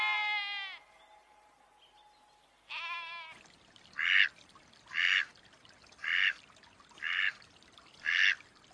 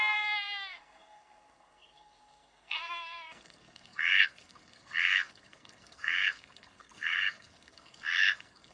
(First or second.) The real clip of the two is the first